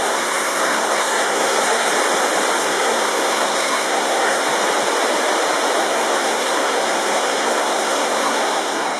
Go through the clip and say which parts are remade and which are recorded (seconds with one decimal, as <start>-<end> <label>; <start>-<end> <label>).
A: 0.0-1.9 remade; 1.9-2.6 recorded; 2.6-4.4 remade; 4.4-5.8 recorded; 5.8-9.0 remade